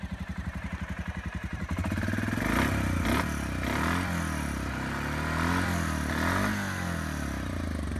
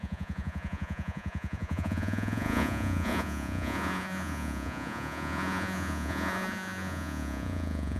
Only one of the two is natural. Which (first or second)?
first